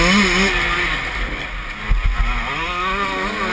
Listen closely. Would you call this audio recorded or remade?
recorded